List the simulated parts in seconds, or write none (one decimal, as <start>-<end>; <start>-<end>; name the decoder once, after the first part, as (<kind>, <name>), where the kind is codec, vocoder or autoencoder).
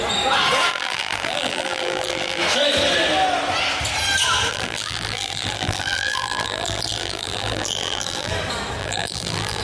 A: 0.7-2.4 (vocoder, BigVGAN v2); 4.5-8.3; 8.8-9.6